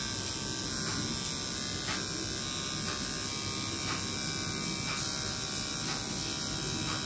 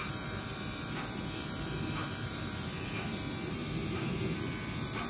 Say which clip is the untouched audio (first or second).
first